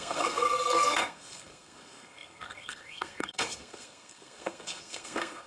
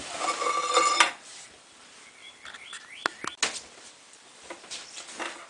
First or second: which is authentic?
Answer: second